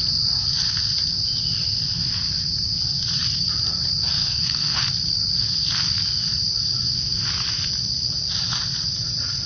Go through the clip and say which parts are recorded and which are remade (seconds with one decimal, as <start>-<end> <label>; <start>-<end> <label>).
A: 0.0-4.2 recorded; 4.2-4.8 remade; 4.8-9.5 recorded